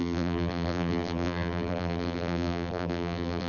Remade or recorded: remade